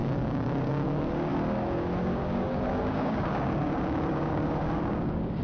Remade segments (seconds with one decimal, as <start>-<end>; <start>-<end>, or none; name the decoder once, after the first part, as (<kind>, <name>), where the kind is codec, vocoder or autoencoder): 0.0-5.4 (codec, DAC)

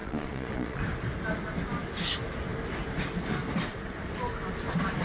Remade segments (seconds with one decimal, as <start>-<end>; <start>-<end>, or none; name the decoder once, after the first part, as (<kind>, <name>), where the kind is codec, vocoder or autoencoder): 0.0-0.8 (vocoder, Vocos)

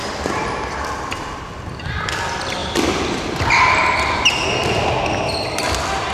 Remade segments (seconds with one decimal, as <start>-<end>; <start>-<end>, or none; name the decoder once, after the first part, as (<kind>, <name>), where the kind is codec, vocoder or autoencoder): 0.0-1.4 (vocoder, BigVGAN v2); 2.6-3.8

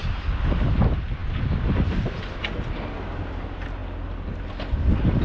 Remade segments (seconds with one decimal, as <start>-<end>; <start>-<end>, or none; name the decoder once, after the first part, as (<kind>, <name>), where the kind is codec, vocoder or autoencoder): none

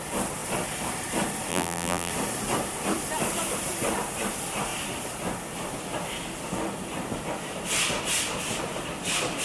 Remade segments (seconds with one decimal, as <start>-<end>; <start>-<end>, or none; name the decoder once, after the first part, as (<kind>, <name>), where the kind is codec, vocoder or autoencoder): 1.5-2.1 (vocoder, BigVGAN v2)

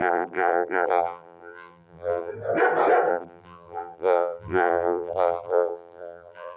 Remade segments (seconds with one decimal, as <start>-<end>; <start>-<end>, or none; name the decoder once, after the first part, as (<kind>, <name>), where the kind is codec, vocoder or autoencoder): 0.0-2.3 (vocoder, BigVGAN v2); 3.1-6.6

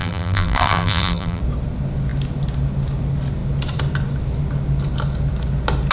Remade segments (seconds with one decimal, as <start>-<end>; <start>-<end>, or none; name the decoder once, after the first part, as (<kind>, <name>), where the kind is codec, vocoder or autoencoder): 0.0-1.4 (vocoder, BigVGAN v2)